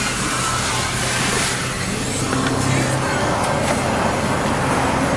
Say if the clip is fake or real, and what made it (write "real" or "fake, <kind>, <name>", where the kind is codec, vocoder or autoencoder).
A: real